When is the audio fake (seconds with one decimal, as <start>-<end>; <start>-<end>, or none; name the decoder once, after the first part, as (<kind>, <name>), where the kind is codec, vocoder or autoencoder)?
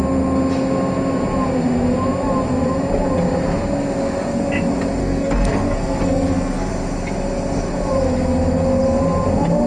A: 5.0-6.7 (codec, SNAC)